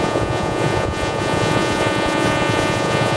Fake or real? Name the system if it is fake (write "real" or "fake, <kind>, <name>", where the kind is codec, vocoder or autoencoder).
fake, vocoder, Vocos